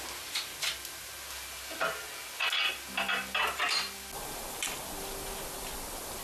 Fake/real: real